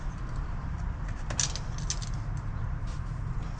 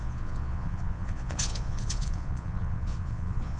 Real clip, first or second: first